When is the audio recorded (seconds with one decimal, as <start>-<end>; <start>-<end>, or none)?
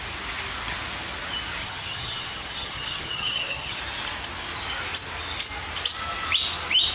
0.0-1.6; 3.8-6.9